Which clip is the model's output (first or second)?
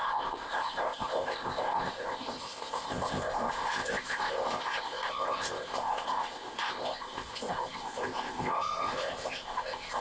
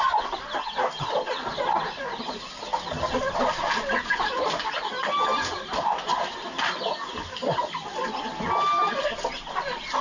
first